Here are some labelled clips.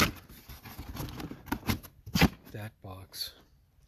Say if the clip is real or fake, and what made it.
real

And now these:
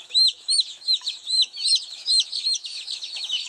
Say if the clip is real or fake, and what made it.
fake, autoencoder, DAC-VAE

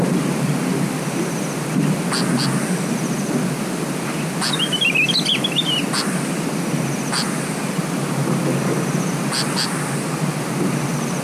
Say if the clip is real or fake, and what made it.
real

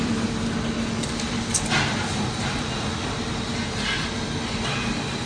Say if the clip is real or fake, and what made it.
real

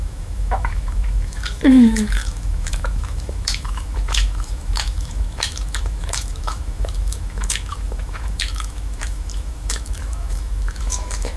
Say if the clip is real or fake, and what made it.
fake, autoencoder, DAC-VAE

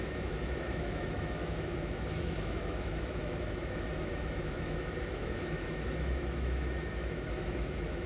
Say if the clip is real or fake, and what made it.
fake, autoencoder, DAC-VAE